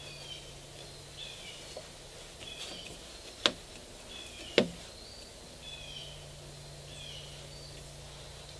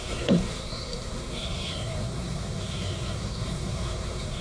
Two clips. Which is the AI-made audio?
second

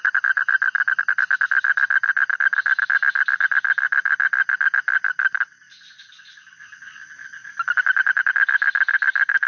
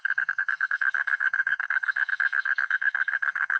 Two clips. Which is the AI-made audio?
second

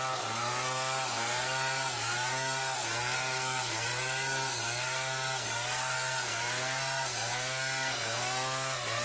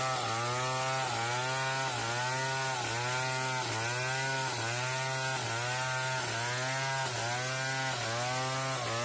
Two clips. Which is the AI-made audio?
first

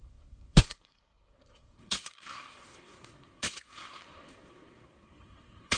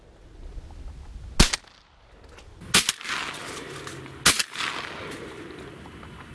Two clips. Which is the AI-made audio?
first